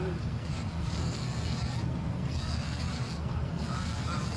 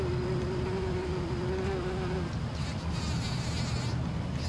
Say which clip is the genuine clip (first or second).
second